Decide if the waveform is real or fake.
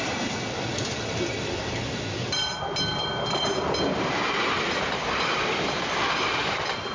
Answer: real